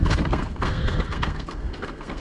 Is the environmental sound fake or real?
fake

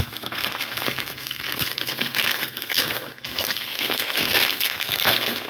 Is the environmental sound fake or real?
fake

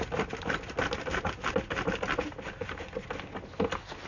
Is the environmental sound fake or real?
real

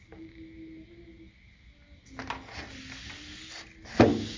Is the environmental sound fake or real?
real